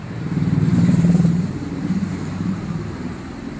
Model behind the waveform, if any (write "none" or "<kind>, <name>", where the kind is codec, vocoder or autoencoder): vocoder, BigVGAN v2